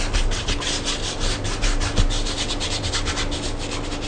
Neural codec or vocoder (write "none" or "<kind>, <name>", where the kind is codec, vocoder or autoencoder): none